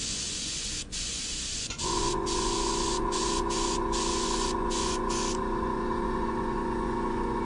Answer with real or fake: fake